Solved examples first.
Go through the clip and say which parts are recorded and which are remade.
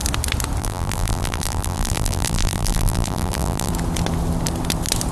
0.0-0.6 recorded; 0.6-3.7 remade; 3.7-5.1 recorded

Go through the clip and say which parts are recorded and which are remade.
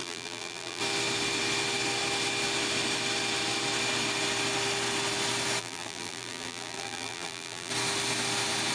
0.0-0.8 remade; 0.8-5.6 recorded; 5.6-7.7 remade; 7.7-8.7 recorded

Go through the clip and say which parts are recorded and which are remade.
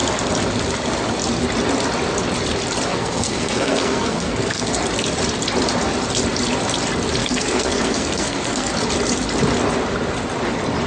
0.0-2.9 recorded; 2.9-4.7 remade; 4.7-7.2 recorded; 7.2-8.7 remade; 8.7-10.9 recorded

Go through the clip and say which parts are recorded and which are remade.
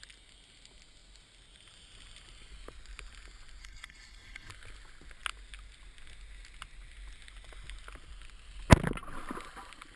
0.0-3.6 recorded; 3.6-4.5 remade; 4.5-10.0 recorded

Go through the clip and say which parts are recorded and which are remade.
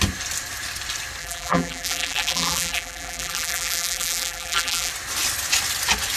0.0-1.2 recorded; 1.2-4.9 remade; 4.9-6.2 recorded